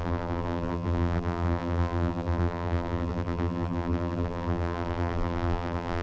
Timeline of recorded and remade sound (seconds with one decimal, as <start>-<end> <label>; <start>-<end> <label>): 0.0-6.0 remade